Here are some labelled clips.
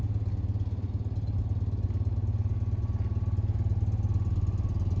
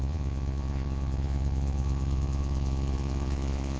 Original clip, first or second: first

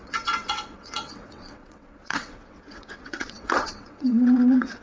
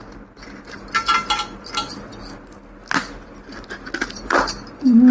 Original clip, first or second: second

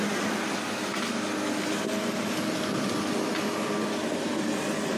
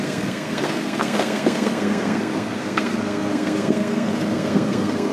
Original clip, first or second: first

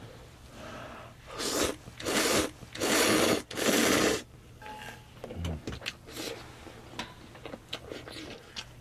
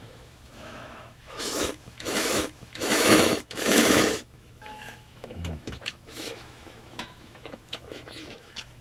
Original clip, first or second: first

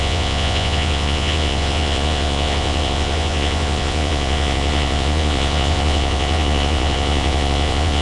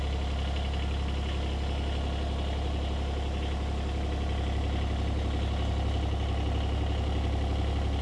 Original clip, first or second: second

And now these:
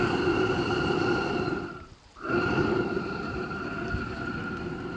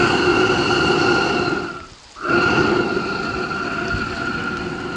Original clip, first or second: second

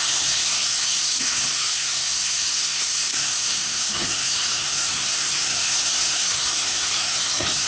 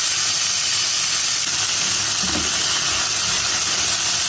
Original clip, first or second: second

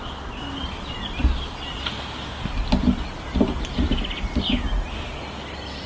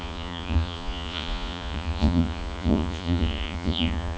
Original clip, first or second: first